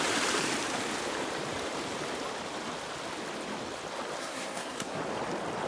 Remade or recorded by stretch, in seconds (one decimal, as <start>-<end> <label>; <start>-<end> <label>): 0.0-4.2 recorded; 4.2-5.0 remade; 5.0-5.7 recorded